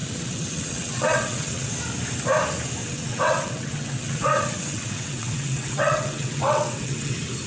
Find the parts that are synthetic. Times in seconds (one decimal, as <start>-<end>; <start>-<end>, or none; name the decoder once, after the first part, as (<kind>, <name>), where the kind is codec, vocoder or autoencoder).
0.0-1.7 (vocoder, WaveNeXt); 2.8-7.1